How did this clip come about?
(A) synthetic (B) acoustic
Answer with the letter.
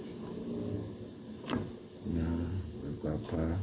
B